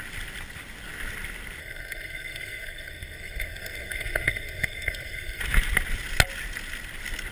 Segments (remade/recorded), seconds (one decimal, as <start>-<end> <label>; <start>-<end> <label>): 0.0-1.6 recorded; 1.6-5.4 remade; 5.4-7.3 recorded

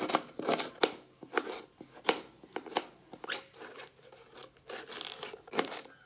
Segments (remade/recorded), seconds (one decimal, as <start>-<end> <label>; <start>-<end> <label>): 0.0-6.1 recorded

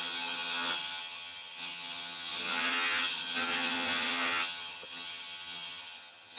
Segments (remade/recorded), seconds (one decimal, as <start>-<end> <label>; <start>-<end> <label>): 0.0-6.4 remade

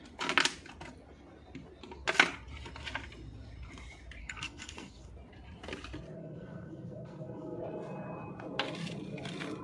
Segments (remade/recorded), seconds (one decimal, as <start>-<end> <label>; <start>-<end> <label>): 0.0-4.2 recorded; 4.2-5.1 remade; 5.1-6.2 recorded; 6.2-7.6 remade; 7.6-9.6 recorded

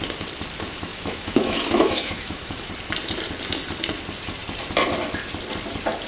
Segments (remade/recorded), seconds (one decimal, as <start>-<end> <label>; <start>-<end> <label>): 0.0-0.9 recorded; 0.9-2.7 remade; 2.7-6.1 recorded